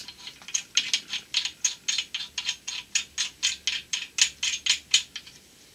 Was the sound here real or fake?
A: real